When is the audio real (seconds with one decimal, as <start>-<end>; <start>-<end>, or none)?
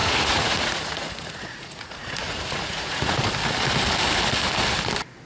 3.2-5.3